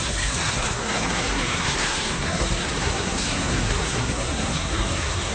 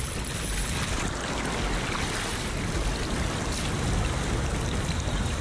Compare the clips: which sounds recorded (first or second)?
second